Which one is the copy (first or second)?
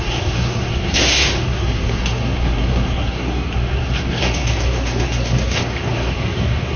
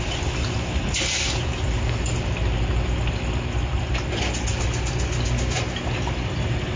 first